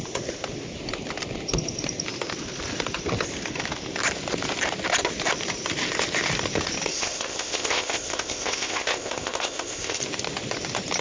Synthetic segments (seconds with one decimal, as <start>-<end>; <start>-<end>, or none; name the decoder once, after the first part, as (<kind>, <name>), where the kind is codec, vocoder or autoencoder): 6.9-10.0 (codec, ZipCodec)